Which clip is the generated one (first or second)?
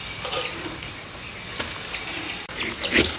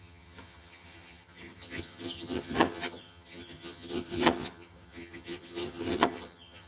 second